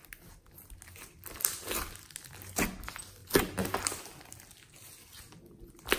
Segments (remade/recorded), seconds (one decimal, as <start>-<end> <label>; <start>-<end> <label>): 0.0-6.0 recorded